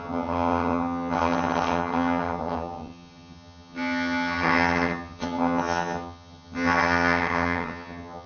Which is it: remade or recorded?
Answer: remade